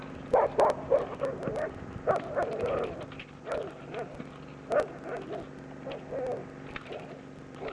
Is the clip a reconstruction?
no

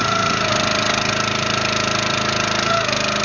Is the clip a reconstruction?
no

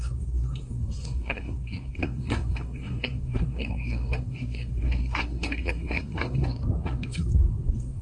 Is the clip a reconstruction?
yes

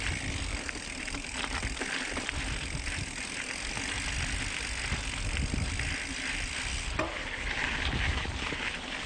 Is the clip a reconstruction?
no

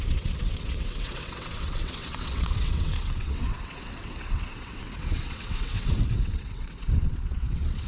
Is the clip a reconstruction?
yes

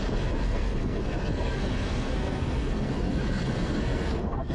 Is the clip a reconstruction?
yes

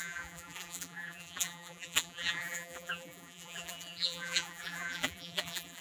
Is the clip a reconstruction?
yes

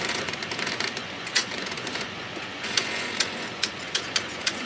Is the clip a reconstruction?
yes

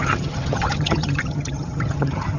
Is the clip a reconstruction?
yes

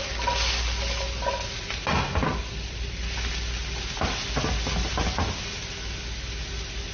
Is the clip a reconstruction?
no